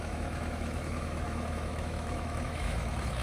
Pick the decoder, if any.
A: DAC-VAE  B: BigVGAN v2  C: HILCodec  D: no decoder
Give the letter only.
A